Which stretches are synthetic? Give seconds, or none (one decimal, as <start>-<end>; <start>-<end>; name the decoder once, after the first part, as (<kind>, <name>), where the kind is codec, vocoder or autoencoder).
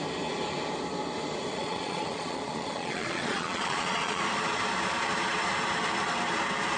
1.5-4.2 (vocoder, Vocos)